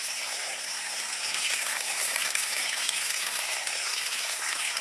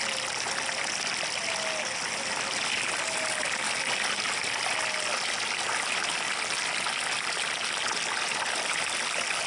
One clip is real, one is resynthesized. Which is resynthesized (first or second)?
first